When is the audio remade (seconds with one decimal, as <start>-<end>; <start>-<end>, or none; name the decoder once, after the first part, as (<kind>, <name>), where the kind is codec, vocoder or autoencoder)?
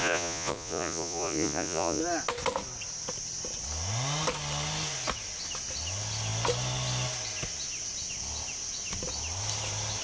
0.0-2.0 (vocoder, Vocos)